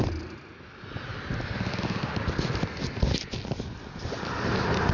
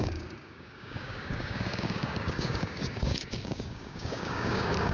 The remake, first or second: second